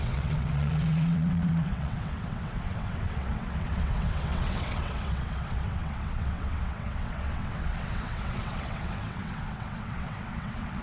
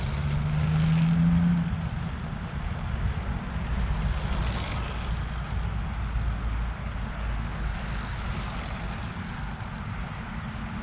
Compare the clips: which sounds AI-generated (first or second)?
first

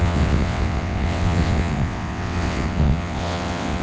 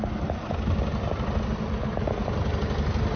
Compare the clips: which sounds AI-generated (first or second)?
first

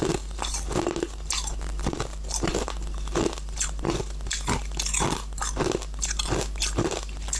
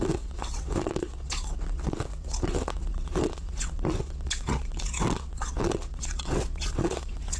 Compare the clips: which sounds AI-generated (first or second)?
second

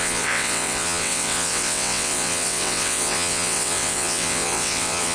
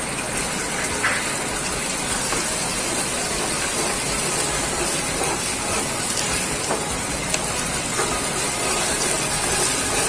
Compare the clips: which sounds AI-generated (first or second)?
first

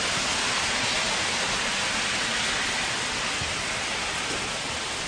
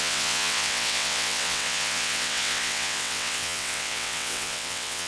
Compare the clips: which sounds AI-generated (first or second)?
second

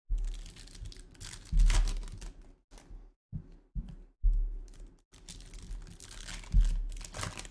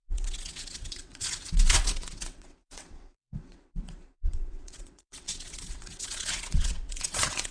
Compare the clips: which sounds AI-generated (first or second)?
second